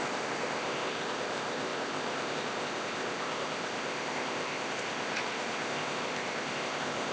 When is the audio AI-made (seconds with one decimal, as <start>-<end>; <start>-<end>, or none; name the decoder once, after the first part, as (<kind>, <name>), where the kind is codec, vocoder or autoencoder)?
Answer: 0.0-7.1 (codec, ZipCodec)